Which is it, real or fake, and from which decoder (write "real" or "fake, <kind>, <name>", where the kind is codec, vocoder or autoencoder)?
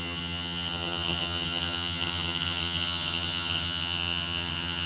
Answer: fake, vocoder, HiFi-GAN